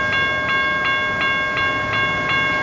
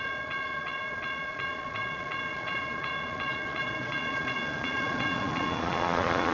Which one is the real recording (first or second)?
first